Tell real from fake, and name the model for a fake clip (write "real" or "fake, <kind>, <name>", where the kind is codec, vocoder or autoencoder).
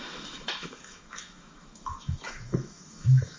fake, autoencoder, DAC-VAE